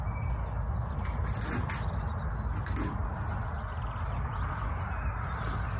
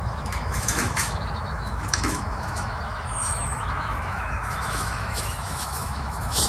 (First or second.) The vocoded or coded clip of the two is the second